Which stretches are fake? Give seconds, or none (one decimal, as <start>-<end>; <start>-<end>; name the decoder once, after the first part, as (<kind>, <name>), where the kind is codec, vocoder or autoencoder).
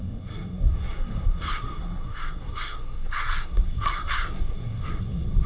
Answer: 0.0-5.5 (codec, SNAC)